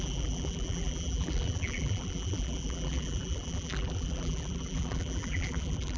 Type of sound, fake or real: fake